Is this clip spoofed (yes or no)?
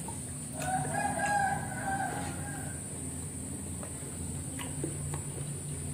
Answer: no